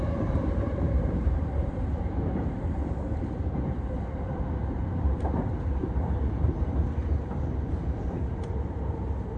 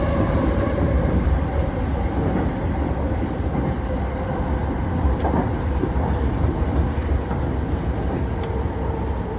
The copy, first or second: first